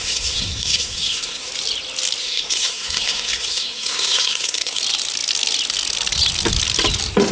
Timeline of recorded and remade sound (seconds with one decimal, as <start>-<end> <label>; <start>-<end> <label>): 0.0-1.5 remade; 1.5-2.2 recorded; 2.2-4.8 remade; 4.8-7.3 recorded